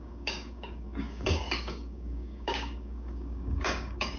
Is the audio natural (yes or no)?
no